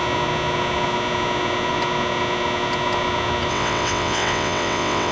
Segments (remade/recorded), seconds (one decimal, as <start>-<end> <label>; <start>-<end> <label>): 0.0-3.5 recorded; 3.5-5.1 remade